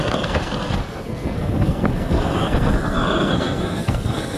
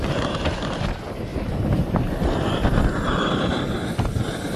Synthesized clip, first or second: first